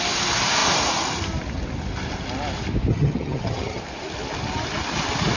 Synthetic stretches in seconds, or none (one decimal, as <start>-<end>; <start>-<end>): 2.9-3.8